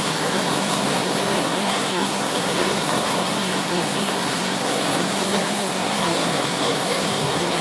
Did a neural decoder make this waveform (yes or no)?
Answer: yes